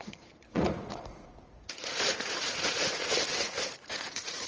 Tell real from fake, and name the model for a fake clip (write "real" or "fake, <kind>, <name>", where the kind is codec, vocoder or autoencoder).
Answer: fake, vocoder, Vocos